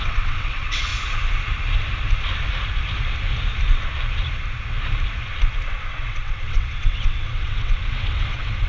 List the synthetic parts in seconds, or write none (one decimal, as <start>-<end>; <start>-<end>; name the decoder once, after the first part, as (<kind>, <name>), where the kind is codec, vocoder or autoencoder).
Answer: 0.0-0.9 (vocoder, WaveNeXt); 5.7-8.7